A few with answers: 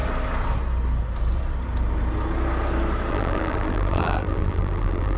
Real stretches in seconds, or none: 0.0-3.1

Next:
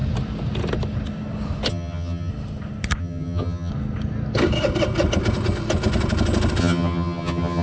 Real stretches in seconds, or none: 0.0-1.7; 2.3-3.0; 3.7-6.6